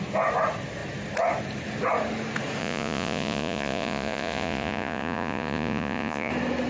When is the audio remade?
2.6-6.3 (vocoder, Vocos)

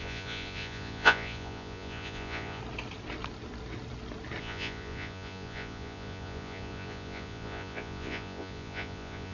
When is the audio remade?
0.0-2.6 (vocoder, Vocos); 4.4-9.3

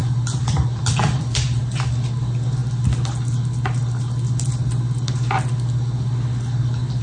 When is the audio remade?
0.0-1.6 (vocoder, BigVGAN v2)

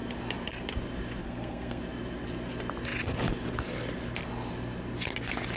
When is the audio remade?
1.2-1.8 (codec, SNAC)